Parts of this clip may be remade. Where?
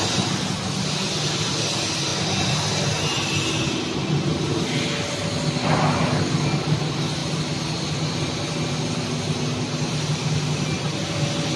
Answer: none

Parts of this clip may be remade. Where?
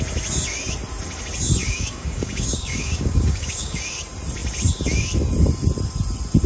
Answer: 1.6-3.8 (codec, DAC)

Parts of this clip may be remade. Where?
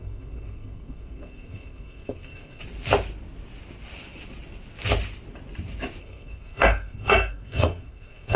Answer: 0.0-2.6 (codec, SNAC); 6.0-8.4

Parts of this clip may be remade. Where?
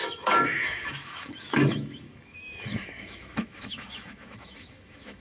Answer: 0.0-5.2 (autoencoder, DAC-VAE)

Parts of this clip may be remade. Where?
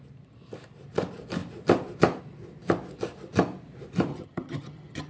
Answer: 4.1-5.1 (vocoder, HiFi-GAN)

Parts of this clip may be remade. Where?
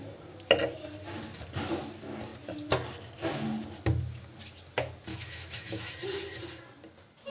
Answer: 5.1-5.9 (autoencoder, DAC-VAE)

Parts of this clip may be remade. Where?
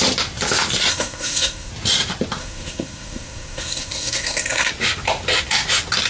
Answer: 0.9-1.7 (codec, SNAC); 2.4-4.7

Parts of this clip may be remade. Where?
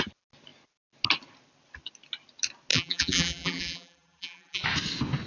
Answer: 2.7-4.6 (vocoder, BigVGAN v2)